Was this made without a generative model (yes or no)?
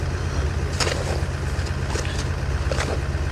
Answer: yes